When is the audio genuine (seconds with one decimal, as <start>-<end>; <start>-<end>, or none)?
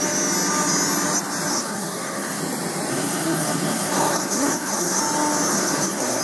0.0-1.5; 2.4-2.9; 5.0-5.5